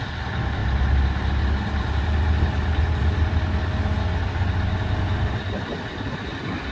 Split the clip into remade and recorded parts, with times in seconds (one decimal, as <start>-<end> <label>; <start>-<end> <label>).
0.0-6.7 recorded